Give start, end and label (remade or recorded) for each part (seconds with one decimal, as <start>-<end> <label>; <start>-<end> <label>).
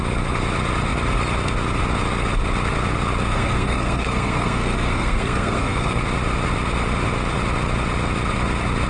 0.0-3.3 recorded; 3.3-6.0 remade; 6.0-8.9 recorded